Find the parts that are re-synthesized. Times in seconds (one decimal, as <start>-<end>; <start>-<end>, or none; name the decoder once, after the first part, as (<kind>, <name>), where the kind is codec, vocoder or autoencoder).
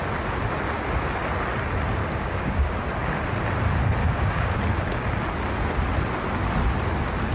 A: 2.0-2.7 (codec, DAC); 4.0-4.6